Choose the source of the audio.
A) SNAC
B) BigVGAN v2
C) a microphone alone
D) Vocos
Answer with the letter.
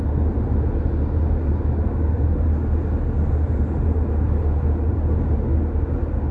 C